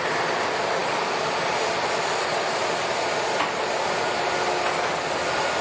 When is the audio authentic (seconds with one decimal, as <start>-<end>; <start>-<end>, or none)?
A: 0.0-5.6